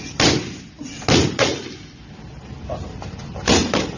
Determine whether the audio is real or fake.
real